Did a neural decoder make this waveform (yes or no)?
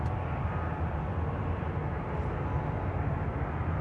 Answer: no